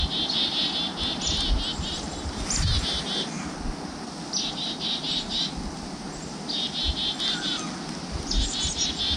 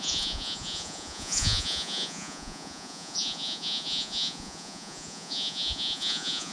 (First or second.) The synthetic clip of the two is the second